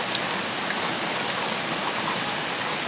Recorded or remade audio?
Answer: recorded